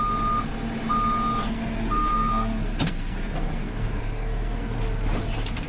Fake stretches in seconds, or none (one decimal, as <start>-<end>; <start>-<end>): 1.4-4.8